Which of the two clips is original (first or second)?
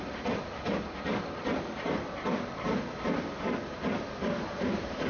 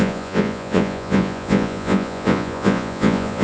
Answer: first